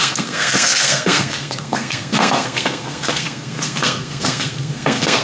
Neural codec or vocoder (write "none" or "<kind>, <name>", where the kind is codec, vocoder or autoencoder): codec, SNAC